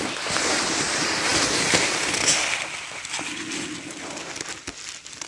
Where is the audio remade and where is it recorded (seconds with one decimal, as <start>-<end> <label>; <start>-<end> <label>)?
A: 0.0-5.3 recorded